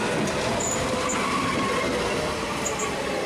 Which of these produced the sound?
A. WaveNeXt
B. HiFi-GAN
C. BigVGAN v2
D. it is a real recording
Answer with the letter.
D